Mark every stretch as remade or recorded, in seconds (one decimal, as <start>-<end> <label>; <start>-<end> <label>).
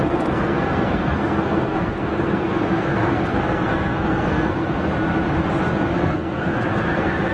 0.0-4.9 remade; 4.9-5.9 recorded; 5.9-7.3 remade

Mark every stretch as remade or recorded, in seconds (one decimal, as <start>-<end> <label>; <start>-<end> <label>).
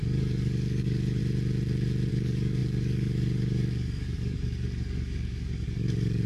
0.0-1.2 remade; 1.2-2.1 recorded; 2.1-6.3 remade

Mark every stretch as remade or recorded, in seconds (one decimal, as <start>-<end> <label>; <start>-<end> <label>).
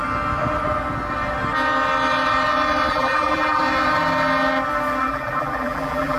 0.0-2.9 recorded; 2.9-3.6 remade; 3.6-5.0 recorded; 5.0-6.2 remade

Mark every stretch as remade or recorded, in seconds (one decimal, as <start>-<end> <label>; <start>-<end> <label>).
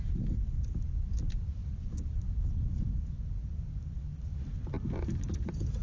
0.0-0.8 recorded; 0.8-5.8 remade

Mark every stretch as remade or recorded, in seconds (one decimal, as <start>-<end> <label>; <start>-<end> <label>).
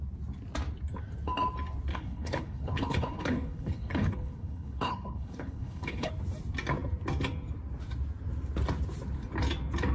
0.0-1.9 recorded; 1.9-6.1 remade; 6.1-9.9 recorded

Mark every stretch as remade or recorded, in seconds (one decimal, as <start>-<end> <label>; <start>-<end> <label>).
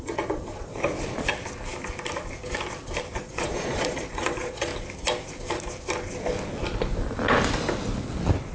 0.0-0.7 remade; 0.7-3.2 recorded; 3.2-4.7 remade; 4.7-8.5 recorded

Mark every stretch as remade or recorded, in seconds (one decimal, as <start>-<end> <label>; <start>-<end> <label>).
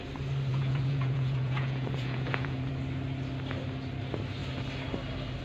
0.0-0.5 recorded; 0.5-2.7 remade; 2.7-5.4 recorded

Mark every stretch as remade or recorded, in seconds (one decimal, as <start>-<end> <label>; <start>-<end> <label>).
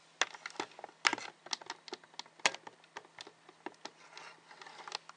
0.0-5.2 recorded